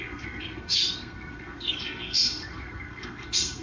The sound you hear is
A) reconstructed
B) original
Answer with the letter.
A